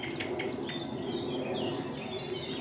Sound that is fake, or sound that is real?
real